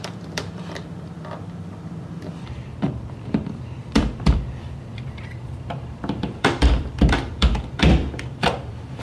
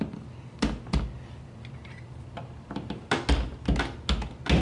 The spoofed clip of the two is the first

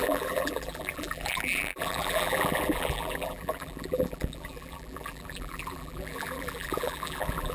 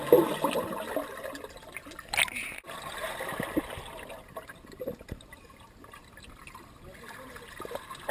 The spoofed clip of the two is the first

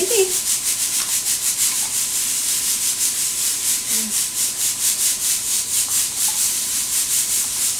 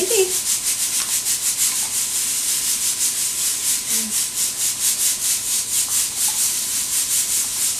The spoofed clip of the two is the first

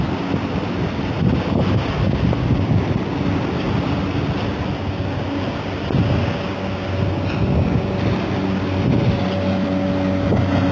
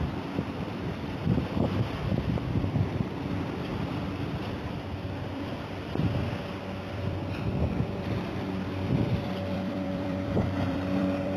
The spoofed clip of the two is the second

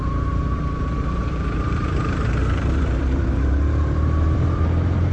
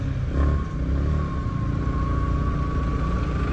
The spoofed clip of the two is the first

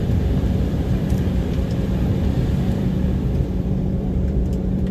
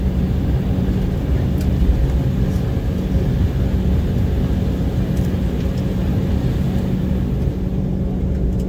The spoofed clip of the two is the first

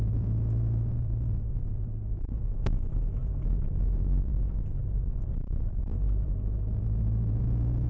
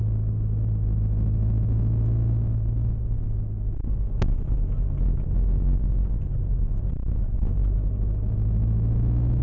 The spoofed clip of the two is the first